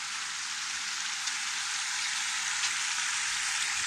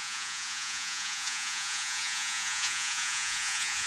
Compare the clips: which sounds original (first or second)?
first